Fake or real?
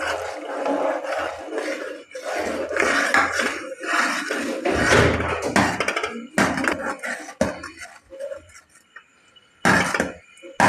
real